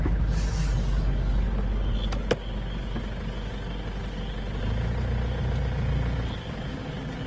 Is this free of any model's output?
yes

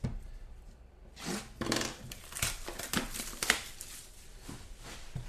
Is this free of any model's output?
yes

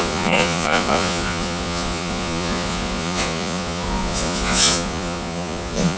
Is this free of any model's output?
no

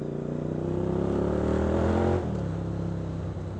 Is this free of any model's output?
yes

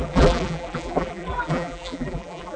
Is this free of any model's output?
no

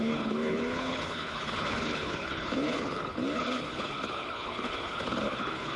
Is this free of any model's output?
no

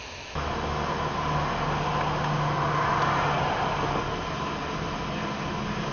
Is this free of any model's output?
yes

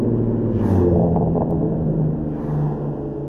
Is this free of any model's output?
yes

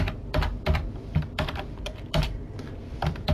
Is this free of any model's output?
no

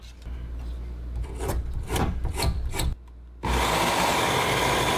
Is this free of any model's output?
yes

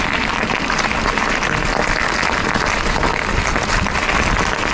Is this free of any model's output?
yes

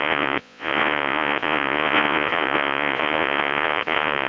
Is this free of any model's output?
no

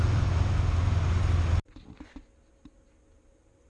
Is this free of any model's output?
yes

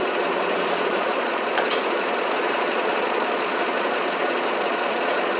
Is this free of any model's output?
no